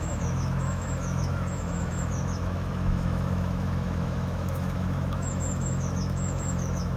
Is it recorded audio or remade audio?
remade